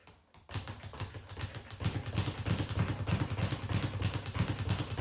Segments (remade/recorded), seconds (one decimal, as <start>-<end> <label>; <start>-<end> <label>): 0.0-5.0 recorded